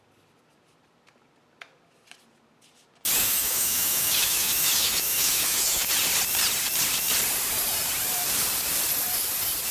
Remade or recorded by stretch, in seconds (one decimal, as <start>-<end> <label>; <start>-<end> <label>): 0.0-3.2 recorded; 3.2-5.9 remade; 5.9-9.7 recorded